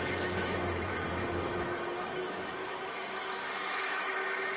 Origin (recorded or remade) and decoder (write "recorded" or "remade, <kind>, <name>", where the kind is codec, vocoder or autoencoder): remade, autoencoder, DAC-VAE